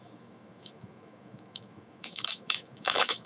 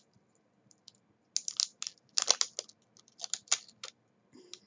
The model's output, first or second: first